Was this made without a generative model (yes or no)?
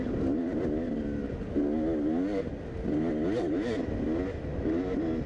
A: yes